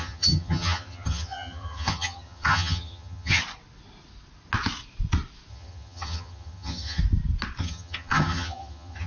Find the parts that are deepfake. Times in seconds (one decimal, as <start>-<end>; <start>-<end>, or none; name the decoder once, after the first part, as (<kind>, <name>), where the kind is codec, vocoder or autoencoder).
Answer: 0.0-3.4 (vocoder, HiFi-GAN); 5.5-7.0; 7.6-9.1